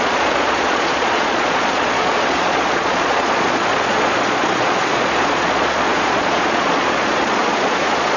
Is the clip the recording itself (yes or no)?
no